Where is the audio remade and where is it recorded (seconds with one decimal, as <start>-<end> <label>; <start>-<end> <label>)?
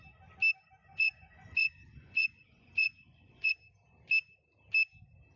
0.0-0.8 recorded; 0.8-3.5 remade; 3.5-5.4 recorded